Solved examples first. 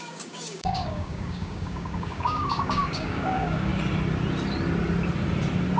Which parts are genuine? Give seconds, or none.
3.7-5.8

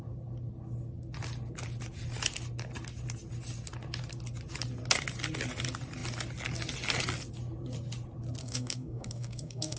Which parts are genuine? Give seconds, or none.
0.0-8.4

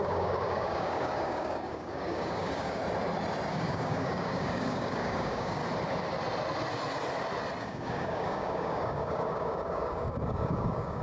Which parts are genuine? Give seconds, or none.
2.8-3.5; 5.6-7.6

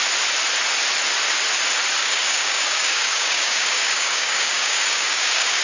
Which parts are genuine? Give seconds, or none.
0.0-2.0

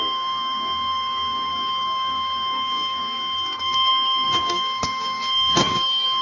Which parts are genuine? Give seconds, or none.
none

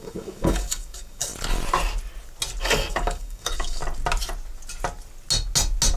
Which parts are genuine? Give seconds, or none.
1.3-2.6; 3.8-6.0

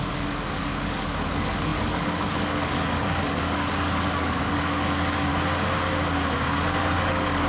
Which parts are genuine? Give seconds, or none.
5.3-6.8

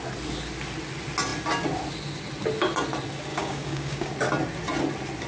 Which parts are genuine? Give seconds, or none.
0.0-3.3; 4.1-5.3